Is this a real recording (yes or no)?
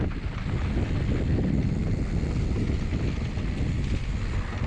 yes